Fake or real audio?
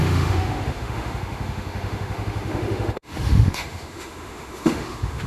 fake